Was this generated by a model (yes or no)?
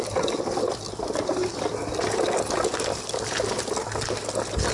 no